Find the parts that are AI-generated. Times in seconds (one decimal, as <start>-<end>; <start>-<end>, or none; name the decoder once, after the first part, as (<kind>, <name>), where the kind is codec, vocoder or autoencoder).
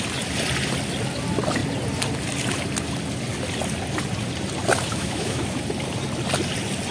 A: 4.9-5.4 (autoencoder, DAC-VAE)